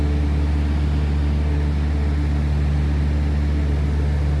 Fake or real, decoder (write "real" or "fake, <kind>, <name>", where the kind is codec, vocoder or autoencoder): real